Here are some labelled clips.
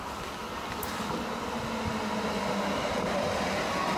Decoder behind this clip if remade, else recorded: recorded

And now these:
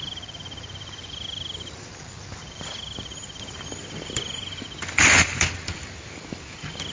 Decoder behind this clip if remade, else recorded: recorded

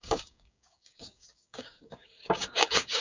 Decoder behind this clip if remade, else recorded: remade, codec, DAC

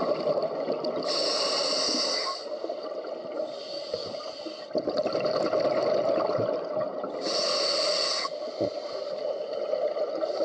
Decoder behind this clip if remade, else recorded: recorded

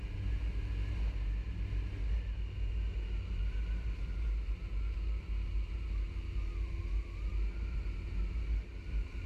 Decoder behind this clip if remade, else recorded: recorded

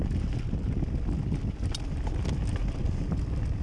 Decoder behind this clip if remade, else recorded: recorded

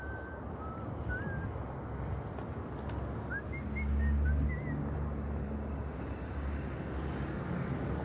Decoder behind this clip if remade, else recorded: recorded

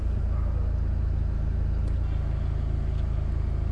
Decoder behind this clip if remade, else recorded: recorded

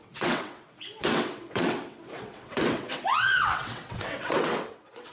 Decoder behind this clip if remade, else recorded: remade, vocoder, WaveNeXt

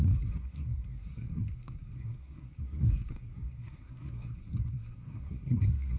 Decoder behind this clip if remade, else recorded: remade, codec, SNAC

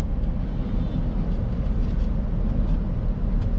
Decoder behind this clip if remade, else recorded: recorded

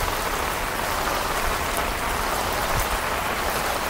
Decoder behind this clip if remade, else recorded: recorded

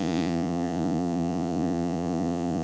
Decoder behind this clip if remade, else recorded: remade, vocoder, Vocos